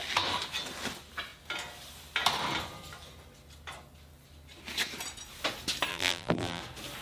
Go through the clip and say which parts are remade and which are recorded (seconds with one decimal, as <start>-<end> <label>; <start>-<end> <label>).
0.0-5.9 recorded; 5.9-6.6 remade; 6.6-7.0 recorded